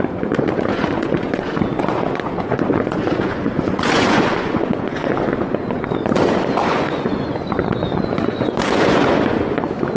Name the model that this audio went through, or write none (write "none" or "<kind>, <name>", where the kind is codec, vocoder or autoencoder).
vocoder, Vocos